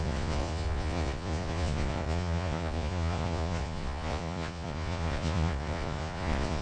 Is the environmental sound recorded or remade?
remade